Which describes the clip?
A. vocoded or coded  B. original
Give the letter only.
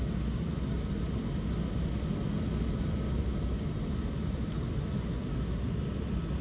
B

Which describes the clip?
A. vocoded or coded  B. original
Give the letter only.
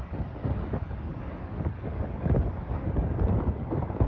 A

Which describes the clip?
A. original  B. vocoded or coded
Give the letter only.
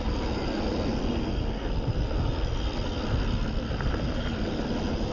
A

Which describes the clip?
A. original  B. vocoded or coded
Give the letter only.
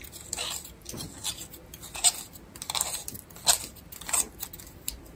A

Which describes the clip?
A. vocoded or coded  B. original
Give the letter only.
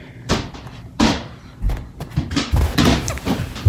B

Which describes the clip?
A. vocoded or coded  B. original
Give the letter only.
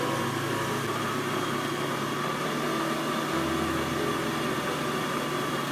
B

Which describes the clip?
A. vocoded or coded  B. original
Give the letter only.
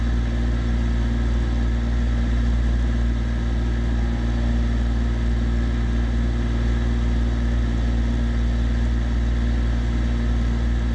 B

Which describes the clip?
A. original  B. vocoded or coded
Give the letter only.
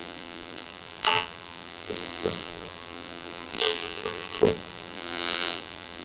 B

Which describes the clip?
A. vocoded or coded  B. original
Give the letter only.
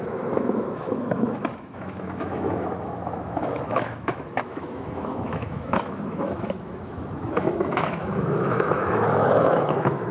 A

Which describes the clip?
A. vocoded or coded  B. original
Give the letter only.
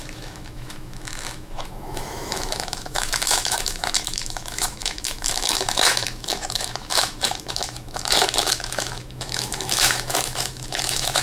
A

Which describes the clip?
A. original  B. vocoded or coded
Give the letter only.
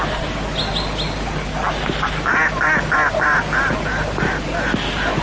A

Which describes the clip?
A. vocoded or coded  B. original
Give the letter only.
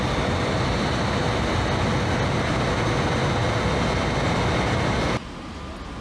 B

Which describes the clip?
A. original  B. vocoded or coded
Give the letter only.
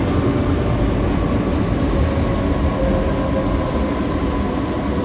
A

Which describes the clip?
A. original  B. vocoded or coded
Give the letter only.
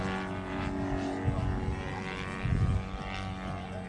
A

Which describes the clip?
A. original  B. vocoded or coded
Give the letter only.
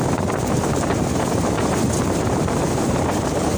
B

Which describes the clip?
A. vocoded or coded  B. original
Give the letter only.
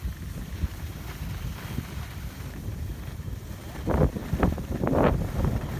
B